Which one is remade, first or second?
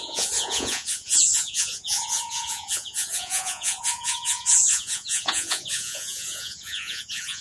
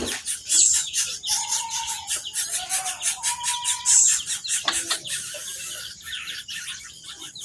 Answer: first